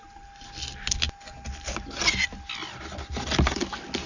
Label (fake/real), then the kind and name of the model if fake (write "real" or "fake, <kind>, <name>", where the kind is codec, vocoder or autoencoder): real